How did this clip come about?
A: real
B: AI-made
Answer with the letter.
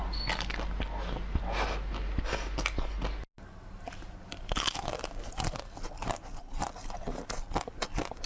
A